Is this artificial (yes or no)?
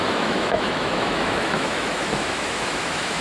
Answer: yes